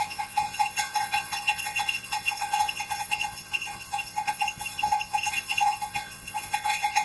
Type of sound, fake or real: fake